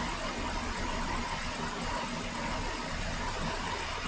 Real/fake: real